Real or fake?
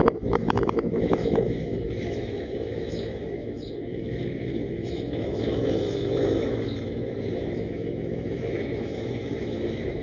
fake